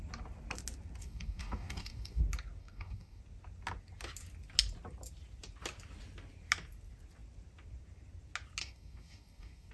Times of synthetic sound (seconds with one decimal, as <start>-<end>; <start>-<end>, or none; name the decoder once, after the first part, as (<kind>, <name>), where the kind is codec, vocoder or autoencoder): 1.0-2.2 (codec, DAC); 2.6-3.2; 8.6-9.7